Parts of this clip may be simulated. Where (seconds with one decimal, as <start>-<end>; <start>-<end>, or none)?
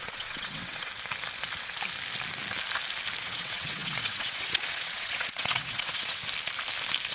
0.0-0.9; 3.2-6.2